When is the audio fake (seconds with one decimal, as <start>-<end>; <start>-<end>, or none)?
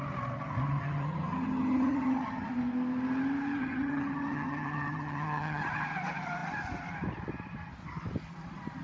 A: 0.8-2.5; 3.6-5.6